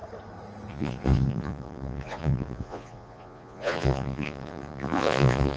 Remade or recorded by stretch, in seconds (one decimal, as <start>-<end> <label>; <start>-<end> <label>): 0.0-0.7 recorded; 0.7-5.6 remade